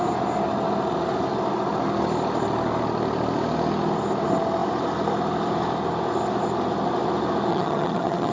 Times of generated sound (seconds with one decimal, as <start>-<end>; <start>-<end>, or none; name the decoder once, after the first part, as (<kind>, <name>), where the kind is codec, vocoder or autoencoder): 7.5-8.3 (vocoder, HiFi-GAN)